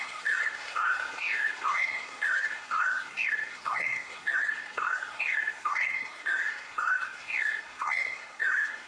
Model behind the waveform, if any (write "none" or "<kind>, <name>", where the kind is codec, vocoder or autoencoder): codec, SNAC